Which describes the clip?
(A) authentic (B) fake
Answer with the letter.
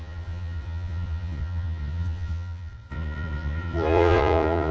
B